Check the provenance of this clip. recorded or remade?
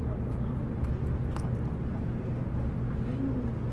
recorded